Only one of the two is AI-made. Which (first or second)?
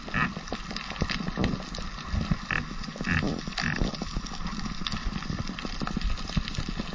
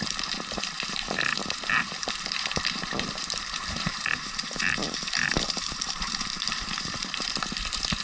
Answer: second